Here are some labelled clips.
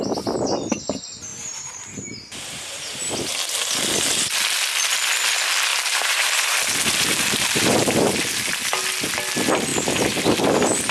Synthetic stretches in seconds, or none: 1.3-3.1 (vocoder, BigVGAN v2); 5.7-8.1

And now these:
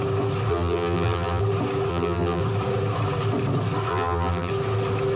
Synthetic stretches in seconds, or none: 0.5-1.4 (vocoder, BigVGAN v2); 1.9-2.4; 3.9-4.5

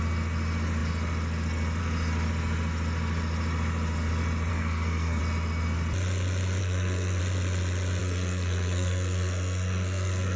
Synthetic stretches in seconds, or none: 4.5-5.2 (codec, SNAC); 6.6-7.2; 8.0-10.4

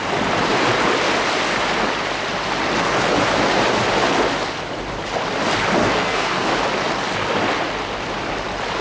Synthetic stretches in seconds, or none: 5.8-6.5 (codec, SNAC)